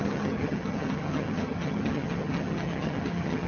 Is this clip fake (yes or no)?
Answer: yes